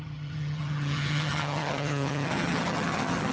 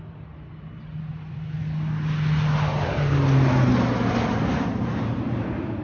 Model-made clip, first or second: first